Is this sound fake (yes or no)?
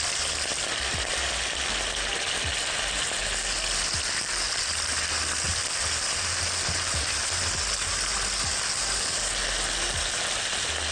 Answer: no